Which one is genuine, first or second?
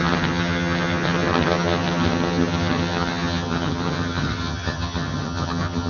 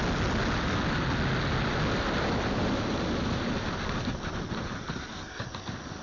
second